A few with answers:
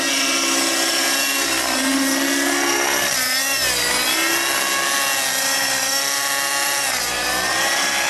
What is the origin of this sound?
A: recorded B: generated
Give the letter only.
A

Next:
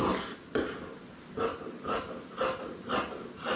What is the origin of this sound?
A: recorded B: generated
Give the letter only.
A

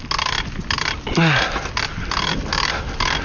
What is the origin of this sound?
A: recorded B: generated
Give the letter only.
A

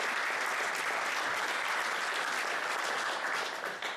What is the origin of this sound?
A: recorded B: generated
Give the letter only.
B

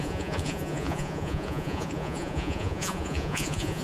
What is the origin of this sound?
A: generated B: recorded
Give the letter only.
A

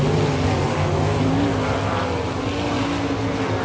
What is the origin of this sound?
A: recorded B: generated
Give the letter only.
A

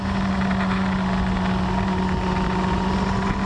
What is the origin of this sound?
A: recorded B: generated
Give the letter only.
A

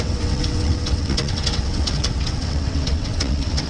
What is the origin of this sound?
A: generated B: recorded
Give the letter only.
A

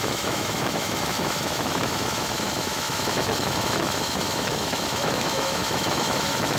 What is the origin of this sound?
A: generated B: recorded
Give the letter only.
A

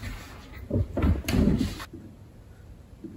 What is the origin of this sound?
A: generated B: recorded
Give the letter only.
B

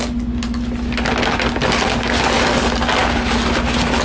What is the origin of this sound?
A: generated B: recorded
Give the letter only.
B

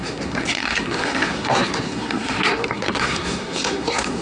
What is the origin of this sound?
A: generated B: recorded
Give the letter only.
A